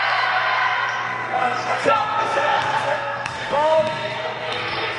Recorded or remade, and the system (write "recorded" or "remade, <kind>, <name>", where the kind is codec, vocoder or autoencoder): remade, codec, SNAC